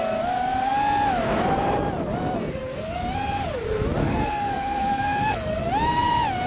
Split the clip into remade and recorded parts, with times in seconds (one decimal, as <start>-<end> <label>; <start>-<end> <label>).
0.0-2.4 recorded; 2.4-3.0 remade; 3.0-4.0 recorded; 4.0-5.6 remade; 5.6-6.5 recorded